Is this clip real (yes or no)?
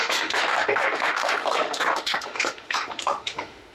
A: no